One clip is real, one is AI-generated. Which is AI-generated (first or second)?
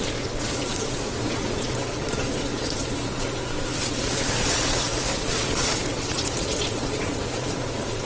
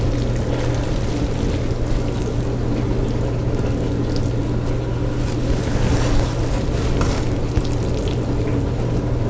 first